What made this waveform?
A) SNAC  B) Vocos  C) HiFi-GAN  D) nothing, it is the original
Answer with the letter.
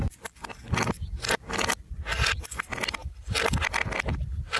D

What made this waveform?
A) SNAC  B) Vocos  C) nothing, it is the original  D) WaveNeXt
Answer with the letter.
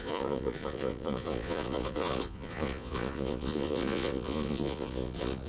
B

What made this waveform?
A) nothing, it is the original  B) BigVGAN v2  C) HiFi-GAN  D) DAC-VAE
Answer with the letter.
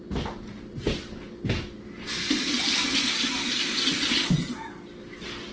A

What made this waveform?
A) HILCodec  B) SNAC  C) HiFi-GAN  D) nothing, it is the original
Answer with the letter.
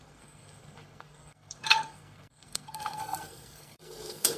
B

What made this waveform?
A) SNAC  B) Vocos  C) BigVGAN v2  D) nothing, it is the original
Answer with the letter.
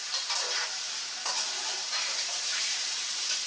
C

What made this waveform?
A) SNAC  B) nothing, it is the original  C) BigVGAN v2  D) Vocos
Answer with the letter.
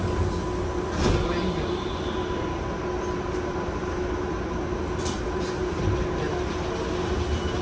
B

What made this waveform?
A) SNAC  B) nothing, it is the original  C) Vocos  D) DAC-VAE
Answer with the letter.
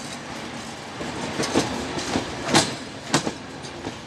B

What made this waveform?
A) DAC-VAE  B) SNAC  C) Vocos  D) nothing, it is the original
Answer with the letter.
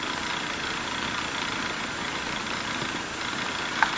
D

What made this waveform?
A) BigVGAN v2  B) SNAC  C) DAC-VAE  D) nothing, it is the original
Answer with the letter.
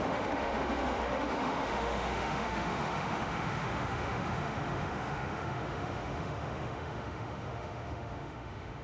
C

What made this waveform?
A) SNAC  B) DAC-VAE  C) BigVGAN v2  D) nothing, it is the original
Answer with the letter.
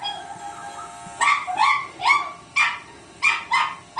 D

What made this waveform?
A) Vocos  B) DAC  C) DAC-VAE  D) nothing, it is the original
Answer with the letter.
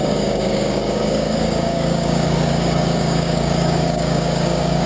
B